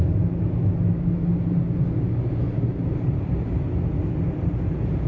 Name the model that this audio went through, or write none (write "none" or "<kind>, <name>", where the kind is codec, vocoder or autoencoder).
none